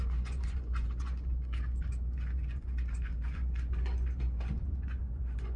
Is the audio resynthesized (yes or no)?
yes